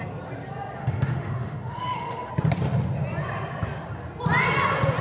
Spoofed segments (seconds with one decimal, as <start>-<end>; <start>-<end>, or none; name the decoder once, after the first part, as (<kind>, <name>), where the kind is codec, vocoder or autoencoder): 0.8-2.3 (autoencoder, DAC-VAE)